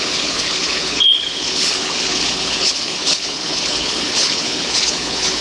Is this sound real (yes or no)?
no